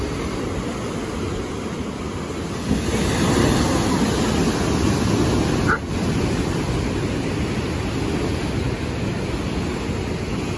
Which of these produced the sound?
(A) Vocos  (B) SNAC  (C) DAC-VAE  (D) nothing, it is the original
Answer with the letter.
D